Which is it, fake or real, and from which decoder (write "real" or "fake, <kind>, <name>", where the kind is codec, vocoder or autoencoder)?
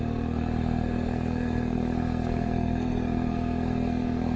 fake, codec, SNAC